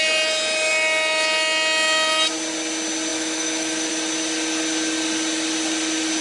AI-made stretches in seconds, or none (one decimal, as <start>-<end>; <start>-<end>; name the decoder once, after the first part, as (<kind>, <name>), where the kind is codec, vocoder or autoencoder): 3.1-3.9 (autoencoder, DAC-VAE)